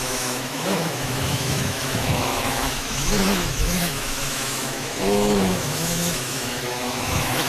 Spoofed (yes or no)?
yes